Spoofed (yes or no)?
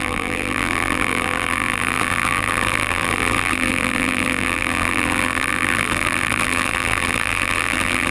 yes